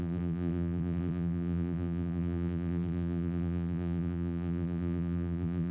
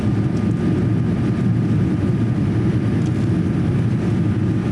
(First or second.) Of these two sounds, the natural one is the second